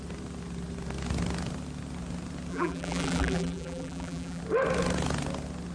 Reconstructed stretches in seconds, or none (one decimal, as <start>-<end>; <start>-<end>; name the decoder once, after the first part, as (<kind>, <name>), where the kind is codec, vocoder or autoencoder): 2.5-4.4 (vocoder, BigVGAN v2)